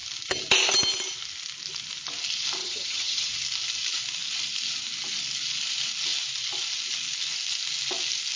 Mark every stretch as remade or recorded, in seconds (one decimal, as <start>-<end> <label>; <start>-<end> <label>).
0.0-2.6 recorded; 2.6-3.3 remade; 3.3-8.4 recorded